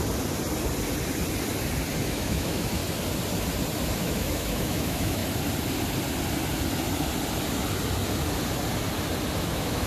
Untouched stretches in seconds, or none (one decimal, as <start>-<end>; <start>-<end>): 0.0-2.0; 2.8-4.0; 5.2-9.4